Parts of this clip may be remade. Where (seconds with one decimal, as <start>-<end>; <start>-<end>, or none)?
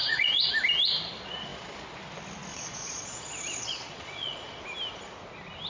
0.0-0.5; 2.5-4.6